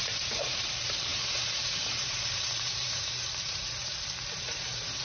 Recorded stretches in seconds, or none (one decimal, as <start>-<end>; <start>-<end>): none